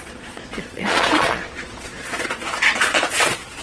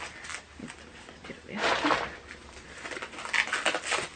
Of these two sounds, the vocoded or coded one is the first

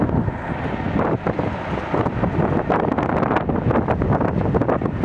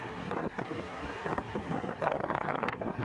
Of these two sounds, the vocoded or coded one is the second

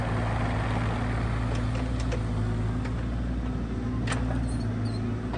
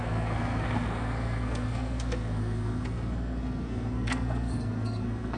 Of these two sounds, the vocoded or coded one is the second